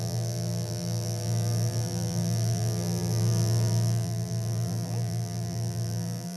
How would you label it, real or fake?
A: fake